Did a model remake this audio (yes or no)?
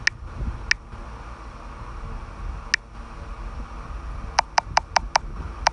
no